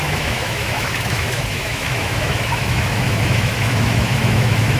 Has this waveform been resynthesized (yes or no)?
yes